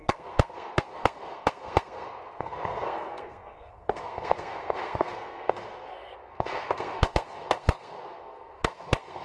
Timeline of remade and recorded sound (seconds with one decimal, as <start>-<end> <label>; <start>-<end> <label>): 0.0-9.2 remade

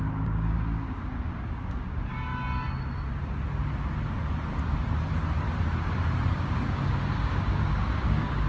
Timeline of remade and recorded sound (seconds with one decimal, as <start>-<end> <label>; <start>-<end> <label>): 0.0-2.3 remade; 2.3-6.3 recorded; 6.3-8.5 remade

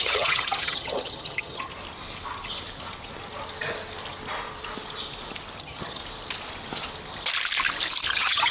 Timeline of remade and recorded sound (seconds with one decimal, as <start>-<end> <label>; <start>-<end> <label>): 0.0-1.7 remade; 1.7-5.6 recorded; 5.6-6.0 remade; 6.0-8.1 recorded; 8.1-8.5 remade

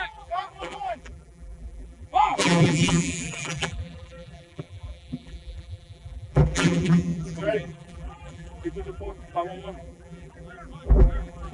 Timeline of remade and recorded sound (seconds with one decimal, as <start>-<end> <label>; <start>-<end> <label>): 0.0-11.5 remade

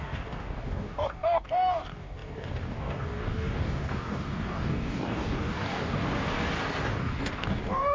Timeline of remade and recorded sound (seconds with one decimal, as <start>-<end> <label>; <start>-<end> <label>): 0.0-6.0 remade; 6.0-6.8 recorded; 6.8-7.9 remade